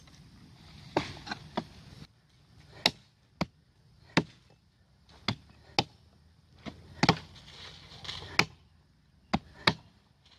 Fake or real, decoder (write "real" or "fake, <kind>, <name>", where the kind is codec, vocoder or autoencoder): real